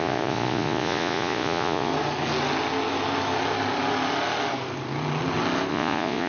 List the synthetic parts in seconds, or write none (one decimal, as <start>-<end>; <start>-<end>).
0.0-1.9; 5.7-6.3